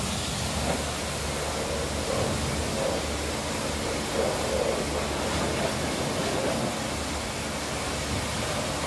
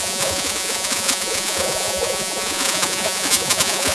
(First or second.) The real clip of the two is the first